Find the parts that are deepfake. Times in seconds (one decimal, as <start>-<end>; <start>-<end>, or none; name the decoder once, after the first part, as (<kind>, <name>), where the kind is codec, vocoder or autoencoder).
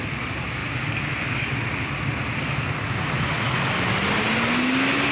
none